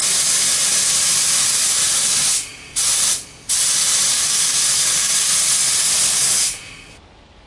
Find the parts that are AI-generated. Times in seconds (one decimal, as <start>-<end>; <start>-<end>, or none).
4.1-5.3